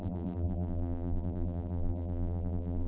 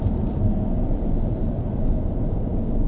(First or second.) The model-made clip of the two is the first